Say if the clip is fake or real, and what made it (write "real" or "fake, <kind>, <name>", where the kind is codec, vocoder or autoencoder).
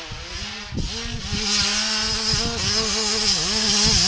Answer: real